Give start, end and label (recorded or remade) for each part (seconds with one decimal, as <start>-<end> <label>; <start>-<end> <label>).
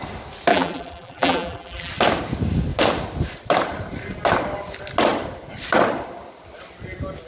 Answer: 0.0-0.5 recorded; 0.5-1.9 remade; 1.9-7.3 recorded